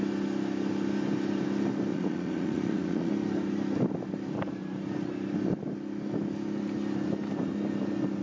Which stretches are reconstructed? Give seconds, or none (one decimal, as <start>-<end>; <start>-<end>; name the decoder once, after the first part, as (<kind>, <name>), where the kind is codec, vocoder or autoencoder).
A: 1.9-3.1 (vocoder, Vocos)